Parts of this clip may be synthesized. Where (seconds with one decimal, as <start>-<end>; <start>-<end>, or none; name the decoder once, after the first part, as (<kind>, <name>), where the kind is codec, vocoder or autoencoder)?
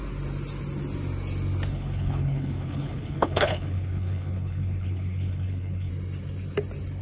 1.7-5.9 (codec, HILCodec)